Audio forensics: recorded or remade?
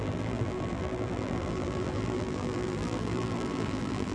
remade